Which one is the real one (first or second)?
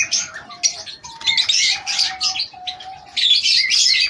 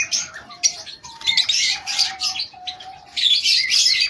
first